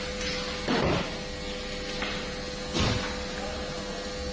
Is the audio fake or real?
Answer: real